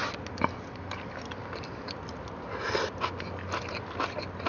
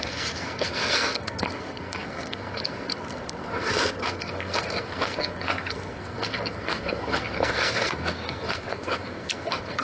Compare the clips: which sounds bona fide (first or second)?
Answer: first